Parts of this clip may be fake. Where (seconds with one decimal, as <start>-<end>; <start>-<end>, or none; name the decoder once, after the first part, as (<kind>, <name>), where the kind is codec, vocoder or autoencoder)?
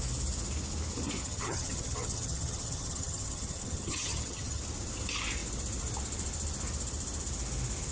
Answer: 1.2-4.6 (vocoder, HiFi-GAN)